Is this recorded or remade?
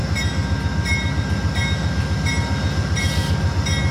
recorded